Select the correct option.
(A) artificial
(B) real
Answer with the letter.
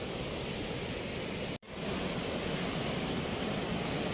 B